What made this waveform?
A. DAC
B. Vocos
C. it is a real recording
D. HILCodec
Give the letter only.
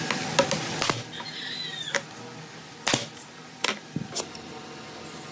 C